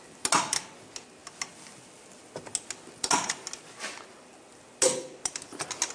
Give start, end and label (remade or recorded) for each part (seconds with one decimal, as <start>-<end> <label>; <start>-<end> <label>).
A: 0.0-5.9 recorded